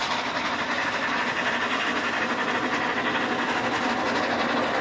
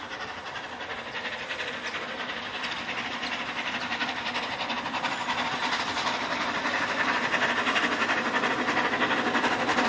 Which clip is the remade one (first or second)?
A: second